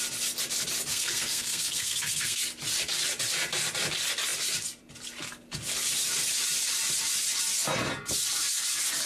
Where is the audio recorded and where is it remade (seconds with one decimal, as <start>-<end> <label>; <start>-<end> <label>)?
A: 0.0-0.9 recorded; 0.9-2.4 remade; 2.4-9.1 recorded